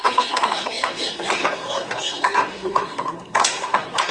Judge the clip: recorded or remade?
remade